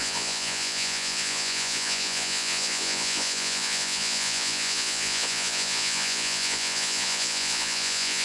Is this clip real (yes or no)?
no